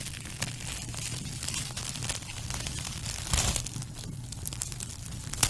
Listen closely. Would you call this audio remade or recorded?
recorded